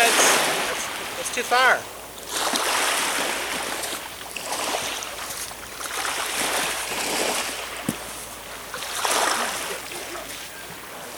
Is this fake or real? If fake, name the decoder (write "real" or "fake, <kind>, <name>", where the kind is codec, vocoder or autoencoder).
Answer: real